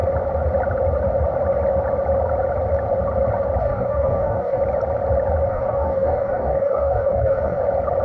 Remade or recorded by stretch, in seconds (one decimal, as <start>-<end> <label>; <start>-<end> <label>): 0.0-3.6 recorded; 3.6-4.6 remade; 4.6-5.5 recorded; 5.5-7.6 remade; 7.6-8.0 recorded